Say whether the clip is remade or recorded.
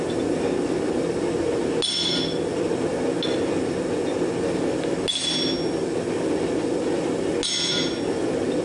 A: recorded